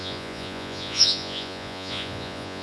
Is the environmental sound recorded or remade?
remade